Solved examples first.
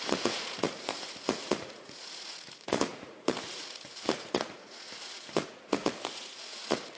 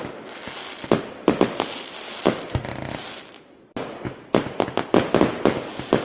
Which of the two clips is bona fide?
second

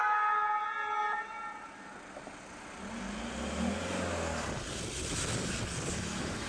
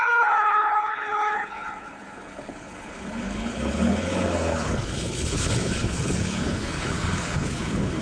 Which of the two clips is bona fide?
first